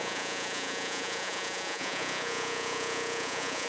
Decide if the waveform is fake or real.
fake